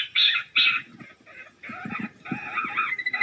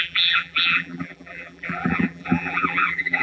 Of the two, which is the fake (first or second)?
second